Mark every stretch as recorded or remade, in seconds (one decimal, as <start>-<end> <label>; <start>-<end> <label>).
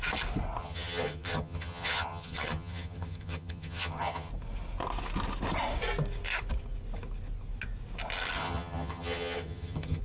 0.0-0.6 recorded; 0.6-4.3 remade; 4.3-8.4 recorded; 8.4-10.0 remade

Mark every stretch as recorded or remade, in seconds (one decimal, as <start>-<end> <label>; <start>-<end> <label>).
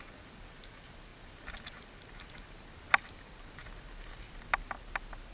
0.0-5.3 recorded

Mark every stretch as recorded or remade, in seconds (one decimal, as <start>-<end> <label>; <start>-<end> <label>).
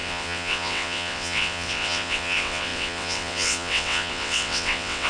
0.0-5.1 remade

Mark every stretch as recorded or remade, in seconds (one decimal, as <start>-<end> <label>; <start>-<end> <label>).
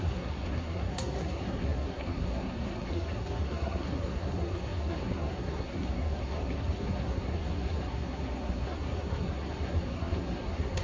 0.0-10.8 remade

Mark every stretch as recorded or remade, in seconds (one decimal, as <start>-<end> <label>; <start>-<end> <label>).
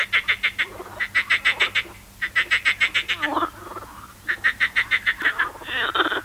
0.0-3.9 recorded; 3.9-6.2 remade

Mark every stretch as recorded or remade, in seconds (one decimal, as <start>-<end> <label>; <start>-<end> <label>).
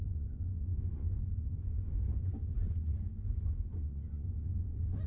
0.0-5.1 remade